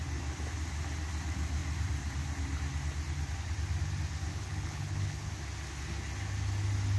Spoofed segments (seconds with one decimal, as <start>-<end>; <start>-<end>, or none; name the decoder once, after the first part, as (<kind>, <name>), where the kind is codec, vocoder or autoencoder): 4.3-5.3 (codec, HILCodec)